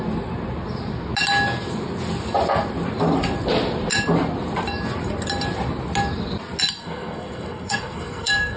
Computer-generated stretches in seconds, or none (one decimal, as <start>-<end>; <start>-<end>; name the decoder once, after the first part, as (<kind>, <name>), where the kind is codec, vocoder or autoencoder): 6.8-8.6 (codec, SNAC)